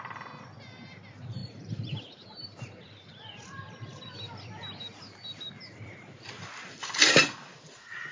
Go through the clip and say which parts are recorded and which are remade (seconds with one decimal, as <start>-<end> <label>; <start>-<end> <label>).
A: 0.0-1.4 recorded; 1.4-4.0 remade; 4.0-8.1 recorded